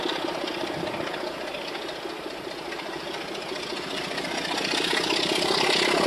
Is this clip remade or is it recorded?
recorded